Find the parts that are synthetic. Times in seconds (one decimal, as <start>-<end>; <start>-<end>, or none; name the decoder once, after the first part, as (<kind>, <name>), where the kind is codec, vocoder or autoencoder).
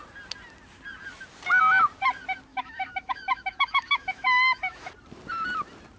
2.5-4.9 (autoencoder, DAC-VAE)